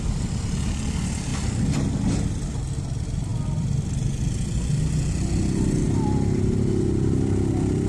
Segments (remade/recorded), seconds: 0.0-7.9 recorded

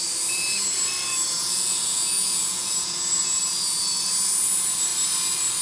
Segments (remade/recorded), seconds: 0.0-1.4 recorded; 1.4-3.4 remade; 3.4-5.6 recorded